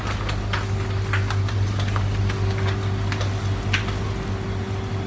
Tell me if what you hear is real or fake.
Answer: real